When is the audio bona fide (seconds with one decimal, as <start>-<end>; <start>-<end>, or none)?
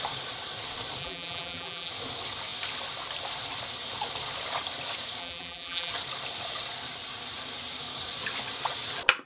0.0-1.0; 1.9-5.2; 5.9-9.3